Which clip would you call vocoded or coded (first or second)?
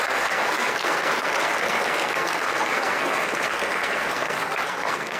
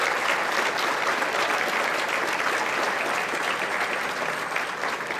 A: first